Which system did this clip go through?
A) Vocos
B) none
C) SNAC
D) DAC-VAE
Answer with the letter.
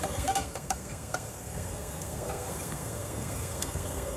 C